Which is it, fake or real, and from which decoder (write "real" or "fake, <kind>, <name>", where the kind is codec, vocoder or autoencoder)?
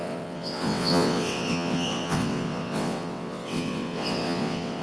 fake, vocoder, WaveNeXt